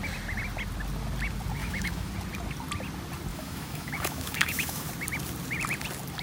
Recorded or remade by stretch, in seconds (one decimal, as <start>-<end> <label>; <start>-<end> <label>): 0.0-1.6 recorded; 1.6-2.1 remade; 2.1-3.3 recorded; 3.3-4.9 remade; 4.9-6.2 recorded